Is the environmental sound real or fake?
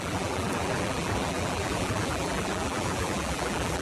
fake